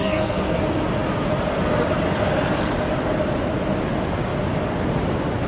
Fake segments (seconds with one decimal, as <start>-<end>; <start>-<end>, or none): 0.0-0.6